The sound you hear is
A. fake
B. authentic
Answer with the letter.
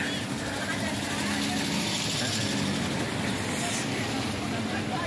B